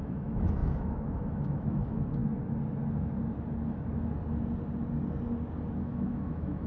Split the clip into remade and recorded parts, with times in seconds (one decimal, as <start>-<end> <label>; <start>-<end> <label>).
0.0-2.2 remade; 2.2-5.7 recorded; 5.7-6.7 remade